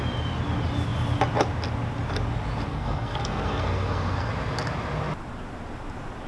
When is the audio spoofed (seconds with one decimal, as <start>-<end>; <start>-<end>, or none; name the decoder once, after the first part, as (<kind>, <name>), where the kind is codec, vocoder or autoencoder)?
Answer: 2.7-4.3 (codec, SNAC)